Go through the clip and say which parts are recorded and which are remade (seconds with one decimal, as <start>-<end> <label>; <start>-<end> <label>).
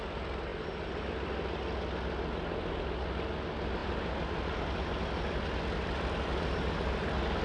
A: 0.0-7.4 recorded